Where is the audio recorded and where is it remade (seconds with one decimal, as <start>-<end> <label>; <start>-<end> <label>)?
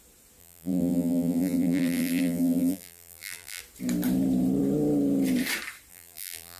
0.0-0.4 recorded; 0.4-3.6 remade; 3.6-5.9 recorded; 5.9-6.6 remade